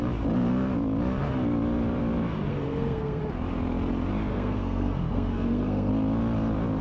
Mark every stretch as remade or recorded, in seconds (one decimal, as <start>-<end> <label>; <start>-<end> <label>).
0.0-2.5 recorded; 2.5-3.2 remade; 3.2-4.3 recorded; 4.3-5.9 remade; 5.9-6.8 recorded